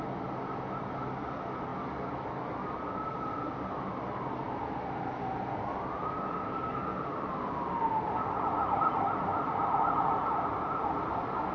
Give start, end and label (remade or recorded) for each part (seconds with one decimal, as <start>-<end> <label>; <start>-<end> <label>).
0.0-11.5 recorded

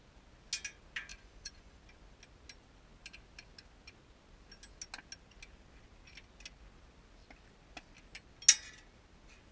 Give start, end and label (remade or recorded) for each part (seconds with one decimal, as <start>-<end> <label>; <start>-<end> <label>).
0.0-1.1 recorded; 1.1-1.8 remade; 1.8-9.5 recorded

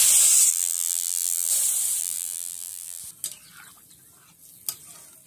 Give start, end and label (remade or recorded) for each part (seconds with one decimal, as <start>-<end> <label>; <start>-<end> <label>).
0.0-0.5 recorded; 0.5-1.5 remade; 1.5-2.0 recorded; 2.0-3.0 remade; 3.0-5.3 recorded

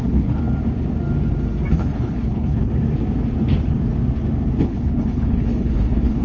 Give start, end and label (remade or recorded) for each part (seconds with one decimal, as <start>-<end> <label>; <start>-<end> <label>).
0.0-0.4 remade; 0.4-1.7 recorded; 1.7-2.7 remade; 2.7-4.6 recorded; 4.6-6.2 remade

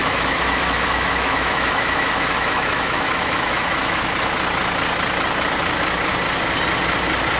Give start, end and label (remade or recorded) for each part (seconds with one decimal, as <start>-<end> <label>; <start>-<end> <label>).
0.0-4.0 remade; 4.0-7.4 recorded

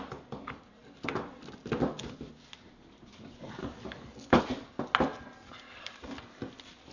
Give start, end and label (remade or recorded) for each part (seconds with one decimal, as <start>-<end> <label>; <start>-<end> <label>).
0.0-3.6 recorded; 3.6-4.4 remade; 4.4-6.9 recorded

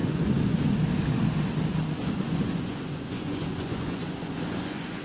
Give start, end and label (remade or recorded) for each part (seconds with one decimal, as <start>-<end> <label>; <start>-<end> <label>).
0.0-0.6 remade; 0.6-2.0 recorded; 2.0-5.0 remade

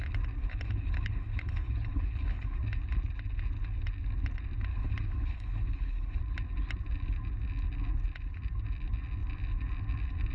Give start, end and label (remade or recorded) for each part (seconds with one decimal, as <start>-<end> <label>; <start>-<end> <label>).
0.0-0.4 recorded; 0.4-2.6 remade; 2.6-4.7 recorded; 4.7-6.2 remade; 6.2-10.3 recorded